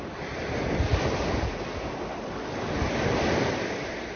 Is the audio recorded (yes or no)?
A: yes